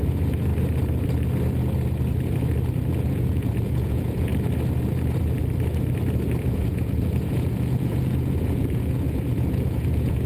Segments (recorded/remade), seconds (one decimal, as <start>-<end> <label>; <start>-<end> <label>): 0.0-0.5 remade; 0.5-2.9 recorded; 2.9-4.3 remade; 4.3-6.4 recorded; 6.4-10.3 remade